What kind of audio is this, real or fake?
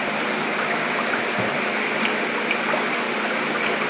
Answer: real